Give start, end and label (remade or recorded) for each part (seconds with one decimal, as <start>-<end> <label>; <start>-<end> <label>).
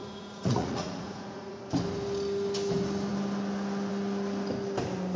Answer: 0.0-1.6 remade; 1.6-5.2 recorded